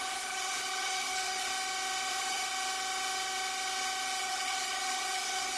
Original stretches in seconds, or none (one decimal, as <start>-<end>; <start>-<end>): 1.5-2.1; 2.5-4.2